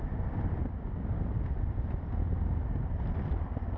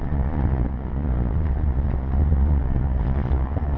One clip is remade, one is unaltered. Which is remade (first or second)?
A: second